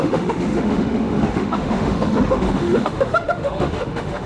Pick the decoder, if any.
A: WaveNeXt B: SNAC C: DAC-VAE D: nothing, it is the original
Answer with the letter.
C